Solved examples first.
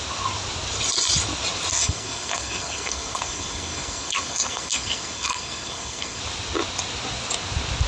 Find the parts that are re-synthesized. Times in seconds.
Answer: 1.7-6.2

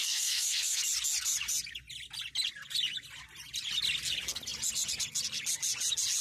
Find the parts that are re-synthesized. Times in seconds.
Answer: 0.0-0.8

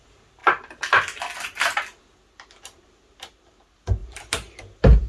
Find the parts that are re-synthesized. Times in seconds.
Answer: none

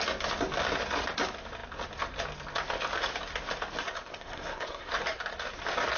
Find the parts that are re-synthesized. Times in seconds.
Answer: 4.1-4.9